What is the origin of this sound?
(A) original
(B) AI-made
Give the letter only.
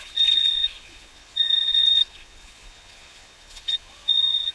B